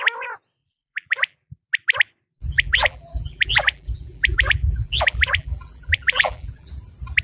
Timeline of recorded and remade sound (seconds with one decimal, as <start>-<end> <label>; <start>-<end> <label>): 0.0-0.6 recorded; 0.6-1.6 remade; 1.6-2.4 recorded; 2.4-6.7 remade; 6.7-7.2 recorded